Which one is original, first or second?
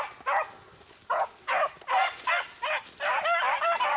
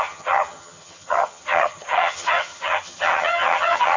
first